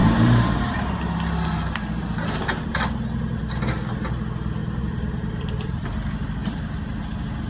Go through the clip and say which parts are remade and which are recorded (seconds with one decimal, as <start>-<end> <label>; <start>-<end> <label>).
0.0-1.0 remade; 1.0-4.6 recorded; 4.6-5.9 remade; 5.9-6.4 recorded; 6.4-7.0 remade; 7.0-7.5 recorded